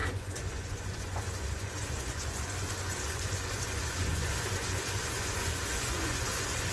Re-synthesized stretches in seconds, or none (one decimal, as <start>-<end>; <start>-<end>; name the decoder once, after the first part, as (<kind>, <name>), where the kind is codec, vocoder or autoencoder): 0.0-6.7 (vocoder, Vocos)